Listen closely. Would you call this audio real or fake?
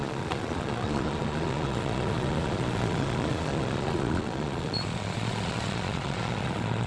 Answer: fake